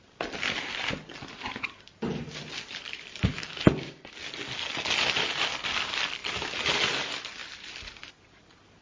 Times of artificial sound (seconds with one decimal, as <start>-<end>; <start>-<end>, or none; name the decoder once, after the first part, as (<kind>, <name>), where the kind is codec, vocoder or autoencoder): 3.3-4.0 (codec, DAC)